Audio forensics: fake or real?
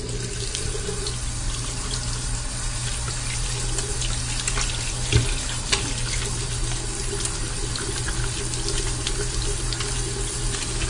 real